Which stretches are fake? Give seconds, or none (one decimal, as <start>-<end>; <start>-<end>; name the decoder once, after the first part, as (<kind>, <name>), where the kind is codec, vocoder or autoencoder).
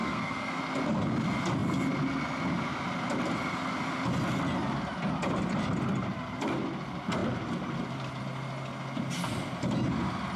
0.0-0.6 (codec, SNAC)